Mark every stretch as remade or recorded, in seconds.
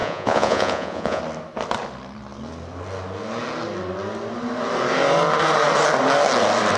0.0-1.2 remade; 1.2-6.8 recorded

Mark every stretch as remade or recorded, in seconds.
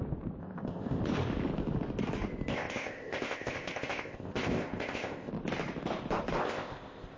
0.0-0.4 recorded; 0.4-1.0 remade; 1.0-2.5 recorded; 2.5-5.3 remade; 5.3-6.4 recorded; 6.4-7.2 remade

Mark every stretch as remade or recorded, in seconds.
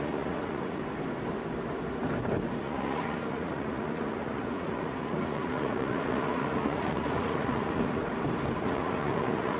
0.0-0.8 remade; 0.8-2.6 recorded; 2.6-8.0 remade; 8.0-8.6 recorded; 8.6-9.6 remade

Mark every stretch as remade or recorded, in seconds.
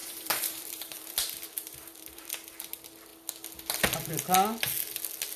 0.0-2.3 remade; 2.3-5.4 recorded